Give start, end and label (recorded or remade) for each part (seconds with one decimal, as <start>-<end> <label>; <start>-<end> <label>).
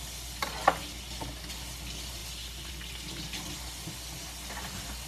0.0-5.1 recorded